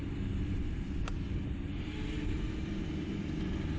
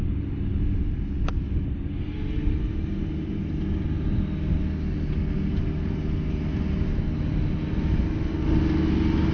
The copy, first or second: first